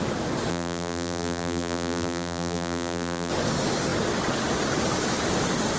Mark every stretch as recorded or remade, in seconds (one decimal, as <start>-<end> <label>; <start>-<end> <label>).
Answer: 0.0-0.5 recorded; 0.5-3.3 remade; 3.3-5.8 recorded